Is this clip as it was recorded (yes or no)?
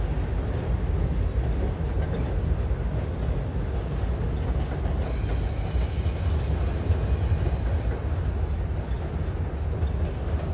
yes